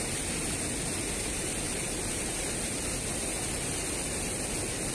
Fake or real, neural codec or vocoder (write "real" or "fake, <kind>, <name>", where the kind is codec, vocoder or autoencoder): real